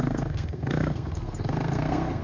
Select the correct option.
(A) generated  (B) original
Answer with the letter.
A